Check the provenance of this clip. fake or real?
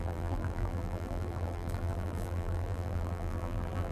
fake